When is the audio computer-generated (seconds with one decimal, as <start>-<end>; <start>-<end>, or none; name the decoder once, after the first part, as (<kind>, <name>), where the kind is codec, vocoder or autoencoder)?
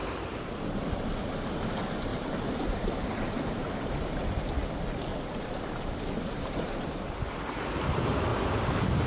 2.1-4.0 (vocoder, BigVGAN v2); 5.1-7.2; 8.3-9.1